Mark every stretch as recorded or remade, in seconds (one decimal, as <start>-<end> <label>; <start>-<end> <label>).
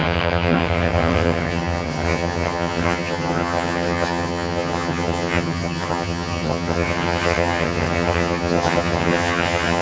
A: 0.0-9.8 remade